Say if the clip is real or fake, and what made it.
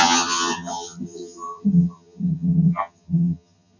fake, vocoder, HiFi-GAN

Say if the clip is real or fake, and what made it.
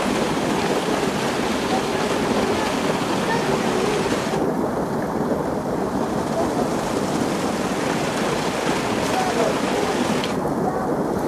real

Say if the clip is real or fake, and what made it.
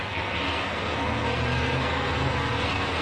fake, codec, SNAC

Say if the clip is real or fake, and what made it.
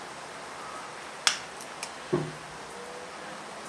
real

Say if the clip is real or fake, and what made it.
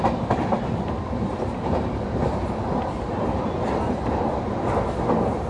real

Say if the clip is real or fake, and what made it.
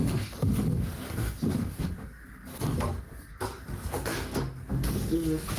fake, codec, SNAC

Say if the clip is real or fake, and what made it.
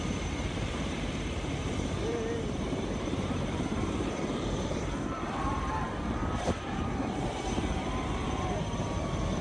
fake, vocoder, BigVGAN v2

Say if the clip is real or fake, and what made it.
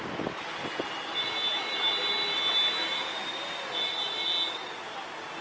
real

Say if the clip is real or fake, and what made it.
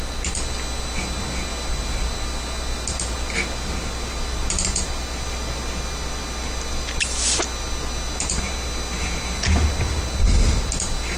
real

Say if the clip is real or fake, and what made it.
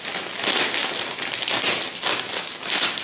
real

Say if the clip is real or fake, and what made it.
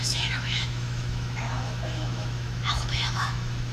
fake, autoencoder, DAC-VAE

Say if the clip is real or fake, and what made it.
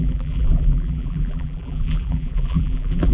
fake, vocoder, BigVGAN v2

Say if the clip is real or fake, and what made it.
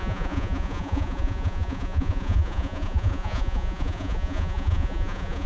fake, vocoder, Vocos